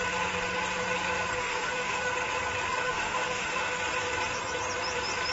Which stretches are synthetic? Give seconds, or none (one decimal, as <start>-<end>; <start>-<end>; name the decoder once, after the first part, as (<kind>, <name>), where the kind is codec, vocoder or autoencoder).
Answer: 1.4-2.1 (autoencoder, DAC-VAE); 2.7-3.8